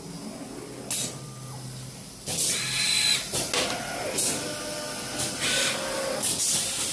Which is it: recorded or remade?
recorded